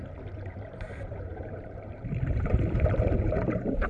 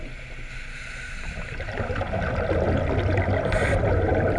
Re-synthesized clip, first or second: first